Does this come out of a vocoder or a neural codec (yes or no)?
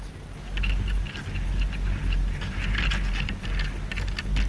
no